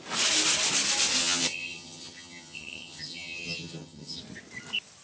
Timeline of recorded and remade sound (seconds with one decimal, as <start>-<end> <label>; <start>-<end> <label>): 0.0-1.2 recorded; 1.2-4.2 remade; 4.2-5.0 recorded